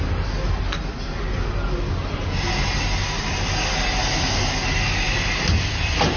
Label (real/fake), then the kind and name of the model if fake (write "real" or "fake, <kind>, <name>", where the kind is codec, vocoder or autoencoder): real